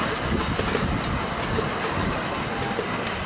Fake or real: real